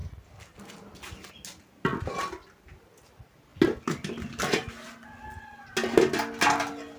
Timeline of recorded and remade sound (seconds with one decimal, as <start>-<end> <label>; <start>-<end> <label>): 0.0-7.0 recorded